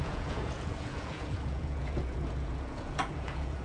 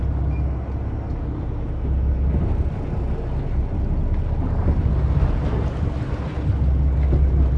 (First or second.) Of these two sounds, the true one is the second